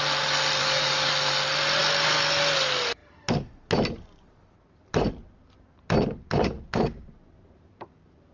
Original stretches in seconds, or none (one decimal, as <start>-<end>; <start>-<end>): 0.0-0.6; 1.1-8.3

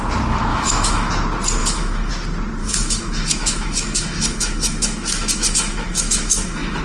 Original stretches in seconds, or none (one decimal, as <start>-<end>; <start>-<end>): 0.0-0.5; 1.1-1.6; 2.1-2.6

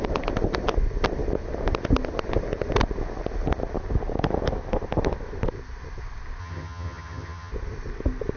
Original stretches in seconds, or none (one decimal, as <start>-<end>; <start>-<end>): 0.0-6.4; 7.5-8.4

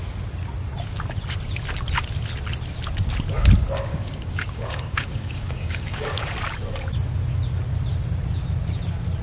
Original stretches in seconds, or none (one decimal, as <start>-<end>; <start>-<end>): 0.0-3.9; 6.3-9.2

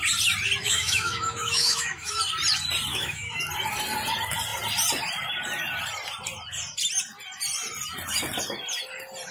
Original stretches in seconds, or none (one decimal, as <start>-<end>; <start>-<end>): 0.0-0.6; 2.2-2.9; 3.4-9.3

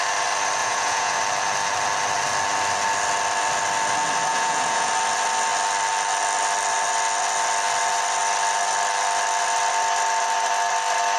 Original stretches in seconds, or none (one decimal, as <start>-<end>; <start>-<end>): 0.0-0.6; 1.2-4.3; 4.9-11.2

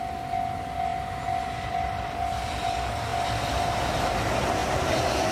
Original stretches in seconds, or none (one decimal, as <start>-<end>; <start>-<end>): 0.0-5.3